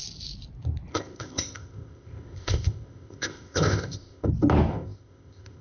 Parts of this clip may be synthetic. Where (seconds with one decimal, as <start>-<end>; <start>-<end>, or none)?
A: 0.9-4.3; 4.7-5.6

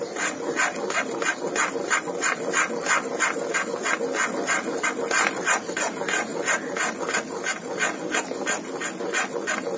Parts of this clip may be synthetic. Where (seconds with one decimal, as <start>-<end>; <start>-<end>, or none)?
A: none

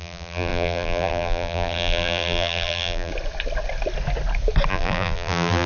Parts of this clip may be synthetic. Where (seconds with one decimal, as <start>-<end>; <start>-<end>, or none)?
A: 0.0-3.1; 4.7-5.7

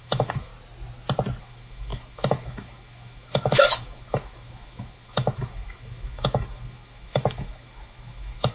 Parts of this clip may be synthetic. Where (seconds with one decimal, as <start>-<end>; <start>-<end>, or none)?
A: 0.0-0.5; 1.4-8.5

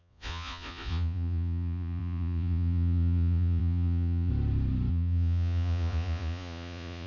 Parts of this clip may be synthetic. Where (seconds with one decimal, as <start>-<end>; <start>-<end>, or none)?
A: 0.0-4.3; 4.9-7.1